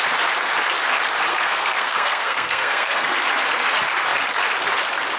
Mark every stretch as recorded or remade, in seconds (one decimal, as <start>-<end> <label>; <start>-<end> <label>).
0.0-1.3 recorded; 1.3-3.1 remade; 3.1-5.2 recorded